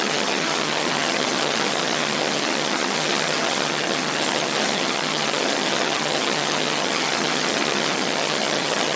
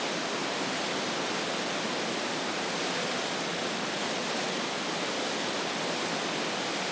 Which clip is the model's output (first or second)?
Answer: first